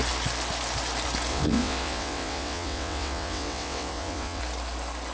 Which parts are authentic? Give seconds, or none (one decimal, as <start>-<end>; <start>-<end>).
0.0-1.3; 4.4-5.1